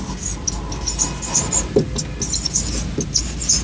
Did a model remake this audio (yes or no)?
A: no